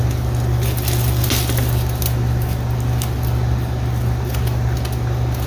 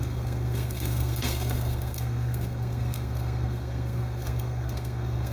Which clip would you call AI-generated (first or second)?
second